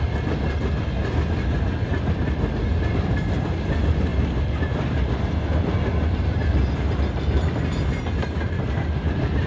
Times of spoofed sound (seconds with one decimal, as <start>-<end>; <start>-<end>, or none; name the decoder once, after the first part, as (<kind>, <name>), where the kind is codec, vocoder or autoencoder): none